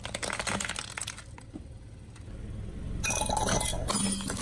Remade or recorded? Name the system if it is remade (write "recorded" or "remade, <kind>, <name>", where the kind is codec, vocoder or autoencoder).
recorded